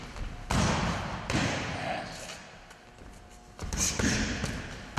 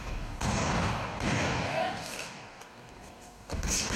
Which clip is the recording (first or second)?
first